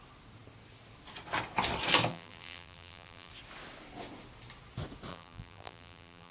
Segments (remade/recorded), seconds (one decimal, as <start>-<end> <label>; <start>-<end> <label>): 0.0-2.1 recorded; 2.1-3.3 remade; 3.3-5.1 recorded; 5.1-6.3 remade